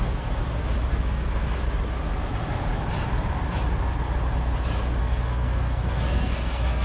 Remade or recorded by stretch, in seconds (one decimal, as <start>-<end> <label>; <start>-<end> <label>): 0.0-0.4 remade; 0.4-0.9 recorded; 0.9-1.6 remade; 1.6-5.0 recorded; 5.0-6.8 remade